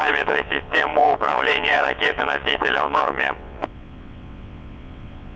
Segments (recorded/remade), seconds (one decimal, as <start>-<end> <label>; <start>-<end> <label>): 0.0-5.4 remade